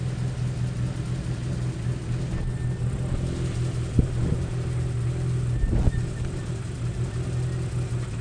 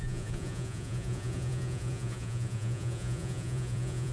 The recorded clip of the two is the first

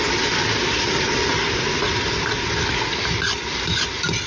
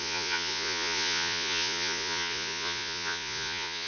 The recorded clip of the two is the first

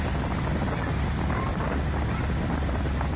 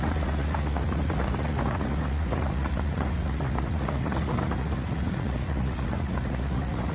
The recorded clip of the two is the first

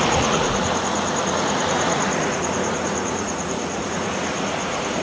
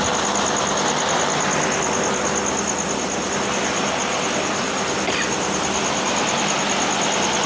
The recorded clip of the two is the second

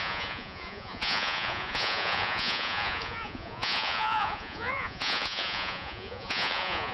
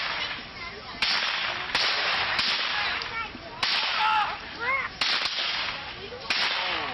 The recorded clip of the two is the second